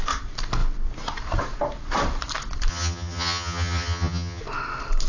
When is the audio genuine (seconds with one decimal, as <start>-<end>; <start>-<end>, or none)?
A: 0.0-2.7; 4.4-5.1